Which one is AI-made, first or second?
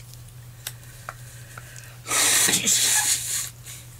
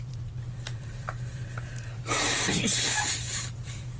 second